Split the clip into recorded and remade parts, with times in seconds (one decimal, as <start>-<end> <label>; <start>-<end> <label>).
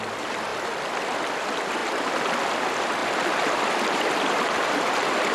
0.0-0.5 remade; 0.5-1.3 recorded; 1.3-1.8 remade; 1.8-2.4 recorded; 2.4-3.0 remade; 3.0-3.6 recorded; 3.6-5.3 remade